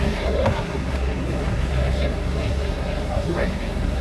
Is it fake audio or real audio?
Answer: fake